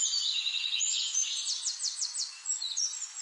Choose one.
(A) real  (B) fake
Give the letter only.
B